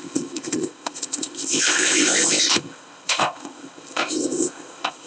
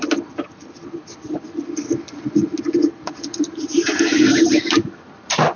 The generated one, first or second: first